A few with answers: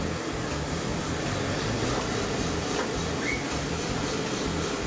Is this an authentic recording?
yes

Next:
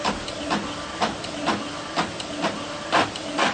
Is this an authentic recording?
yes